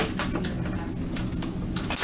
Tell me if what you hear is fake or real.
real